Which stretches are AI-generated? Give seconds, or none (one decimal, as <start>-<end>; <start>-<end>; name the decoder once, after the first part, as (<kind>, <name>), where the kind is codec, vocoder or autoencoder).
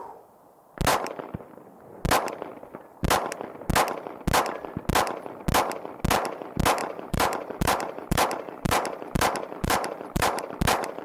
0.9-1.6 (vocoder, BigVGAN v2); 6.8-10.5